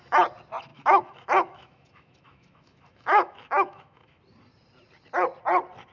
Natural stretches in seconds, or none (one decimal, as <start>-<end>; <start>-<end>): 0.0-0.7; 4.2-5.9